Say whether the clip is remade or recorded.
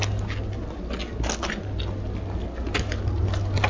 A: recorded